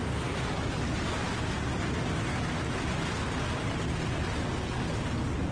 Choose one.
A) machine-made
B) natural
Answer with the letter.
B